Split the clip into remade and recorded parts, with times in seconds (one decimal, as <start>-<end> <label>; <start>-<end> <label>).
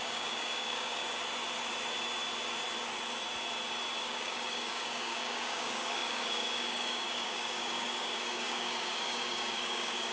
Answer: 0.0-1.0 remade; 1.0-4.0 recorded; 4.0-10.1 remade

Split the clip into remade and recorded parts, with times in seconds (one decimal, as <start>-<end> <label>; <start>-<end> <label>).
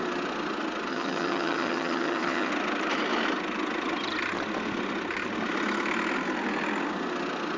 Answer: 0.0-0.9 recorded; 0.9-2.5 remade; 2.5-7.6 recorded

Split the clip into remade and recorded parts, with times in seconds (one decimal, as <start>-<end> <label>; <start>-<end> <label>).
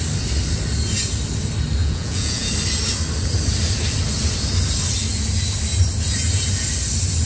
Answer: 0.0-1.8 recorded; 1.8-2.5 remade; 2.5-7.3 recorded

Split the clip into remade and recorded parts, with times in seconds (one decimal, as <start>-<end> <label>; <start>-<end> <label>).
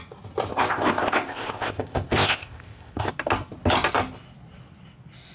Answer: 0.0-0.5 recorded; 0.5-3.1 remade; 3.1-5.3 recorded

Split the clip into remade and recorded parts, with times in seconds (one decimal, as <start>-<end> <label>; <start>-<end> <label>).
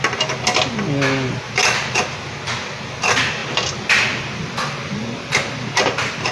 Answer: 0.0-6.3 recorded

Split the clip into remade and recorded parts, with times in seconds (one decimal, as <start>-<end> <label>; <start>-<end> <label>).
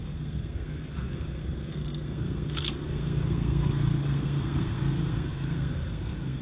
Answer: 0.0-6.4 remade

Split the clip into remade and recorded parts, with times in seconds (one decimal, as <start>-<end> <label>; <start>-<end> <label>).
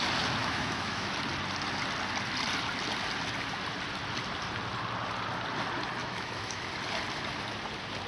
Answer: 0.0-0.4 recorded; 0.4-1.1 remade; 1.1-6.0 recorded; 6.0-6.7 remade; 6.7-8.1 recorded